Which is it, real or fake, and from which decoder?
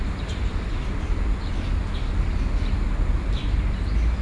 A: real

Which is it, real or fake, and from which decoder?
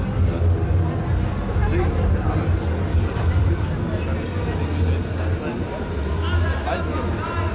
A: real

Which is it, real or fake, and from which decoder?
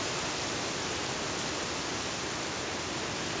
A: real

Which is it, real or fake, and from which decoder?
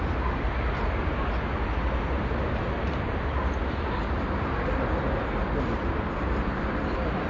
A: real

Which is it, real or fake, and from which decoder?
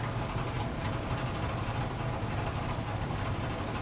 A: real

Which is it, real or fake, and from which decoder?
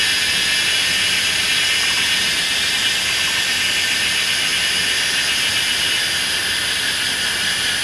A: real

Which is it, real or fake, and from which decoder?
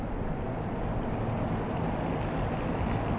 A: real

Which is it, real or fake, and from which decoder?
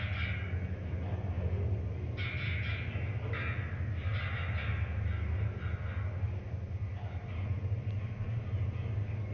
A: real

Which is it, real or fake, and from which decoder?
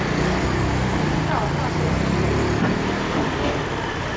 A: real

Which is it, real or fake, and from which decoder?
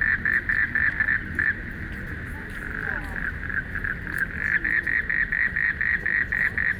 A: real